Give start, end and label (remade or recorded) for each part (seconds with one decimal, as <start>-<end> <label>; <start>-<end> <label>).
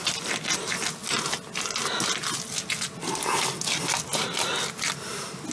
0.0-5.5 recorded